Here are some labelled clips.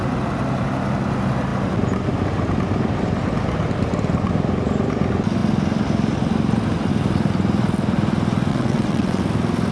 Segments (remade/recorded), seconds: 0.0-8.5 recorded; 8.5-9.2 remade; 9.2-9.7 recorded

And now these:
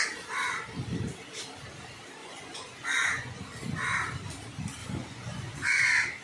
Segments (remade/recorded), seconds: 0.0-2.2 recorded; 2.2-3.4 remade; 3.4-4.8 recorded; 4.8-5.8 remade; 5.8-6.2 recorded

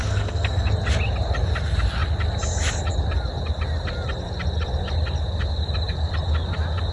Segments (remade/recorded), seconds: 0.0-0.7 remade; 0.7-6.9 recorded

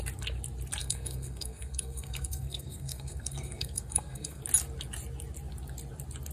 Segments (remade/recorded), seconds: 0.0-0.8 recorded; 0.8-4.4 remade; 4.4-6.3 recorded

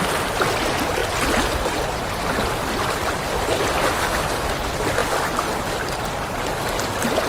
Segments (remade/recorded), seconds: 0.0-7.3 recorded

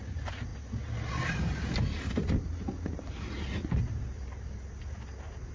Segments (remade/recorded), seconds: 0.0-5.5 recorded